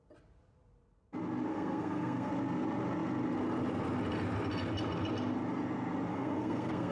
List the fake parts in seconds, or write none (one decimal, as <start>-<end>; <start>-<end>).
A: 1.5-2.3; 6.1-6.9